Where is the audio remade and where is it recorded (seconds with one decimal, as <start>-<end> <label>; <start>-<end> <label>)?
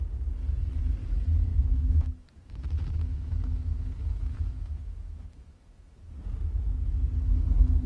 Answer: 0.0-1.5 recorded; 1.5-6.1 remade; 6.1-7.9 recorded